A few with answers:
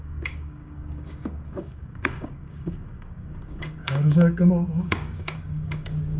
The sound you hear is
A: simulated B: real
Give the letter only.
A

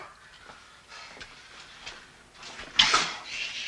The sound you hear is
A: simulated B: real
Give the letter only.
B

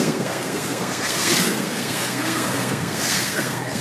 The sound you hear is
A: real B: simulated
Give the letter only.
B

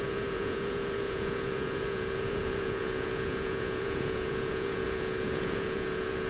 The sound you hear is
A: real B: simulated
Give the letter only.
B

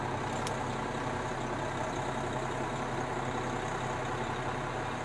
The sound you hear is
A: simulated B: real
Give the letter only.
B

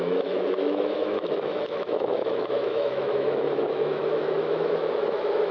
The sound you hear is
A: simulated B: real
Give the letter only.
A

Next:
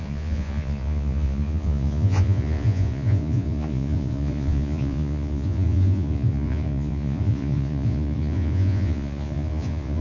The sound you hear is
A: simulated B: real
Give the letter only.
A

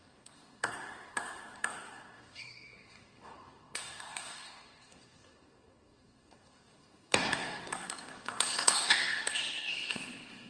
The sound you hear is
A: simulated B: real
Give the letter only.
A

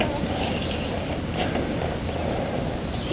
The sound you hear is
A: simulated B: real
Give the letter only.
B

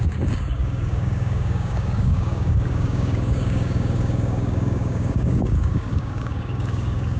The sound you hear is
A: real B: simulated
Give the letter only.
B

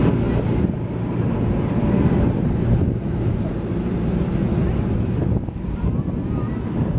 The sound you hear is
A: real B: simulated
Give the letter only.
A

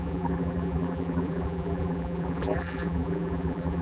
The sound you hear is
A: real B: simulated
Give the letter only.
B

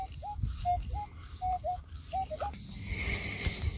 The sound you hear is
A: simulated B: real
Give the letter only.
B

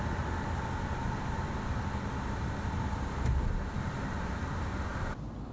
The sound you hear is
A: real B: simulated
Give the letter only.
A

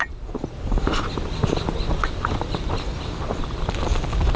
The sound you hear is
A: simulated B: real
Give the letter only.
B